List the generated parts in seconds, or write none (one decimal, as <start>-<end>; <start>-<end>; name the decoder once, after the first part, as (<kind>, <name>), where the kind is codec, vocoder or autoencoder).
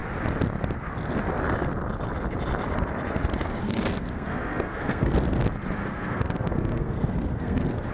3.6-5.1 (codec, SNAC); 5.8-7.9